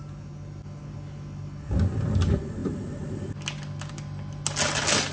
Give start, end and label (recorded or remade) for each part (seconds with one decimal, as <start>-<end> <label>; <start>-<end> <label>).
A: 0.0-5.1 recorded